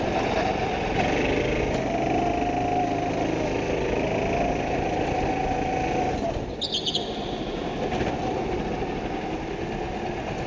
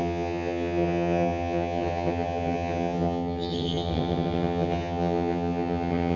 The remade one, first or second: second